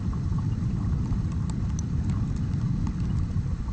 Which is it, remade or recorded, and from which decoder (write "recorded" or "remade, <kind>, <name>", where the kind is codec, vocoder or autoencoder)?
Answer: recorded